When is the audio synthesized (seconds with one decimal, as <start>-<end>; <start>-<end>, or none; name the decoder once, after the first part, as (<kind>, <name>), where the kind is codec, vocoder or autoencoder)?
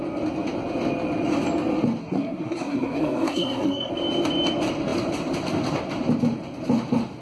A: 2.0-3.9 (codec, SNAC)